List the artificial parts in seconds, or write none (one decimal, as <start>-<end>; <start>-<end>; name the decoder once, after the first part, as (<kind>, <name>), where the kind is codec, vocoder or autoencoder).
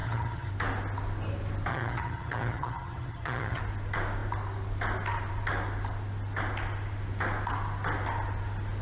0.0-0.5 (vocoder, HiFi-GAN); 1.7-3.6